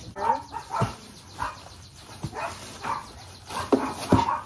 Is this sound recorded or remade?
recorded